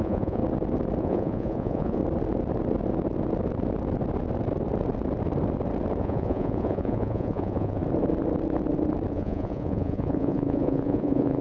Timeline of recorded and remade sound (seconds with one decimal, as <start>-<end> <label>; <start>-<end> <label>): 0.0-0.4 remade; 0.4-1.0 recorded; 1.0-2.0 remade; 2.0-6.0 recorded; 6.0-7.8 remade; 7.8-9.1 recorded; 9.1-11.4 remade